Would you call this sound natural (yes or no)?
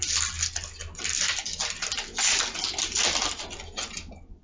yes